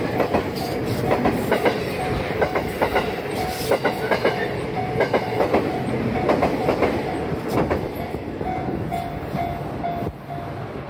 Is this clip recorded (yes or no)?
yes